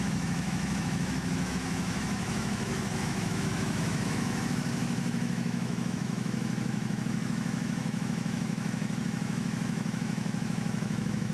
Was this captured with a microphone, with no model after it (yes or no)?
no